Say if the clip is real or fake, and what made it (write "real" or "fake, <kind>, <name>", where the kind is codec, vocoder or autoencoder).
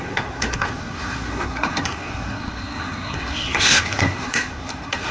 fake, codec, SNAC